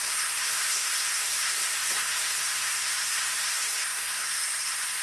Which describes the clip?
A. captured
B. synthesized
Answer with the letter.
B